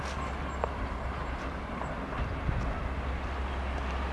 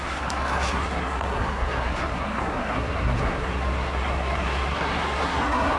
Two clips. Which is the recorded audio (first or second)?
first